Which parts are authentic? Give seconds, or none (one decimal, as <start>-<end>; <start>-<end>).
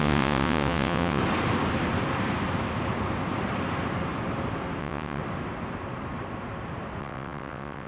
1.2-4.8; 5.2-7.0